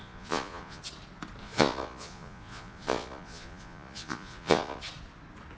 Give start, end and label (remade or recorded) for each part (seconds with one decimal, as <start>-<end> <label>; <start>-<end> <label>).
0.0-0.8 remade; 0.8-1.4 recorded; 1.4-4.8 remade; 4.8-5.6 recorded